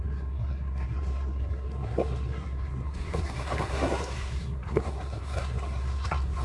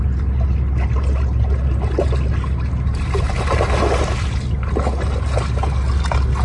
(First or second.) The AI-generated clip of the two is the first